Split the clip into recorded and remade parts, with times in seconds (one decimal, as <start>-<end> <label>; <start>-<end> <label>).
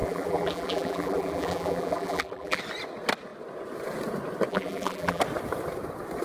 0.0-2.6 remade; 2.6-4.5 recorded; 4.5-5.2 remade; 5.2-6.2 recorded